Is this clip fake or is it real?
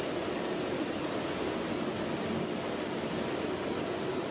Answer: real